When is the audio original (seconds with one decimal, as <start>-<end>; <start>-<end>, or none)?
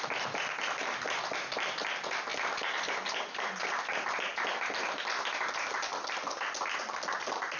0.0-7.6